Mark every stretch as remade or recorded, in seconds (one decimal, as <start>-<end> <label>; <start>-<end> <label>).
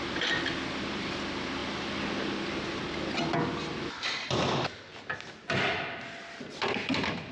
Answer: 0.0-7.3 recorded